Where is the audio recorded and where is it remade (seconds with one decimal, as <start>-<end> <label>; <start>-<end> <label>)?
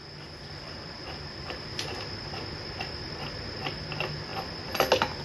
0.0-5.2 recorded